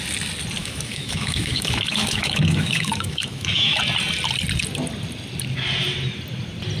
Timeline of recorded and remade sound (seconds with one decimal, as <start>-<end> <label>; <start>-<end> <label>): 0.0-0.6 recorded; 0.6-3.8 remade; 3.8-6.8 recorded